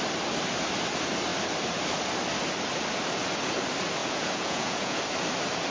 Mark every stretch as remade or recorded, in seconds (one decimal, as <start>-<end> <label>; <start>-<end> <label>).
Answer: 0.0-4.0 recorded; 4.0-5.0 remade; 5.0-5.7 recorded